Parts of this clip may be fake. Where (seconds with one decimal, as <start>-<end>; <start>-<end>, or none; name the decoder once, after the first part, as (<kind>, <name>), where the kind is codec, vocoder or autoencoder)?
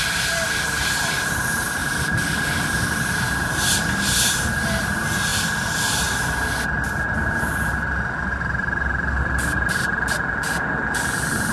1.8-2.3 (vocoder, BigVGAN v2)